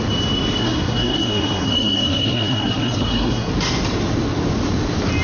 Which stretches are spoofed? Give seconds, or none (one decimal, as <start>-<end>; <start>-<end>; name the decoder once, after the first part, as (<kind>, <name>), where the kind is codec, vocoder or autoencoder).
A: 0.6-3.5 (codec, SNAC)

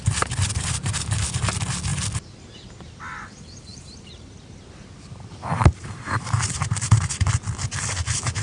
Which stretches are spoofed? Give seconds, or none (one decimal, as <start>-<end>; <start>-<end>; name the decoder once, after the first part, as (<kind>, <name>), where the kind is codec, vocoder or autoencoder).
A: 3.7-7.1 (vocoder, BigVGAN v2)

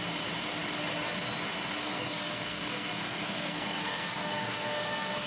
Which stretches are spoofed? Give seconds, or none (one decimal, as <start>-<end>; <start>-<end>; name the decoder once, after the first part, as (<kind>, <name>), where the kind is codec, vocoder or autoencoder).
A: 1.8-5.3 (codec, SNAC)

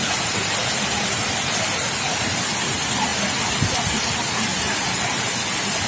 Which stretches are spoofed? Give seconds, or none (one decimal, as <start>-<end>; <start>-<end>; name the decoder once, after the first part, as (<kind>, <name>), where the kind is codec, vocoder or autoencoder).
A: none

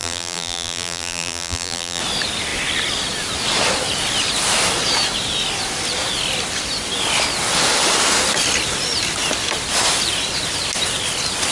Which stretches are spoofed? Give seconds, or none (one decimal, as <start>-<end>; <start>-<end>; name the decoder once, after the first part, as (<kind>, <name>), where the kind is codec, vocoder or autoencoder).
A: 0.0-2.0 (vocoder, BigVGAN v2)

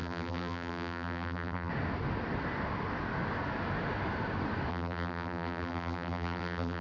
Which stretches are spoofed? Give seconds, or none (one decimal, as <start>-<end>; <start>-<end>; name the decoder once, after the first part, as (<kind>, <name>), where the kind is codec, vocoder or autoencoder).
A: 0.0-1.7 (vocoder, BigVGAN v2); 4.7-6.8

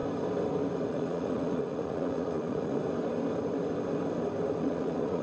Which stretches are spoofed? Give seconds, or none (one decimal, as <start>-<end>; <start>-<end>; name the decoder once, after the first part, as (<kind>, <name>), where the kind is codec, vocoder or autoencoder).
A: 0.9-2.8 (vocoder, Vocos); 4.6-5.2

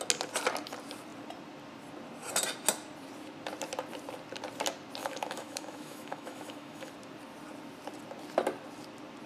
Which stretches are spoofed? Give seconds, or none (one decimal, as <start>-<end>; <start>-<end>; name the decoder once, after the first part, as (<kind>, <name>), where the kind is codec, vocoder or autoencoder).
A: 5.0-6.9 (autoencoder, DAC-VAE)